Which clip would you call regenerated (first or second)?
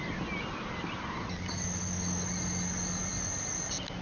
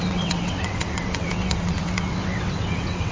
second